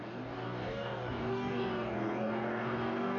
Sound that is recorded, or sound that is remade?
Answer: remade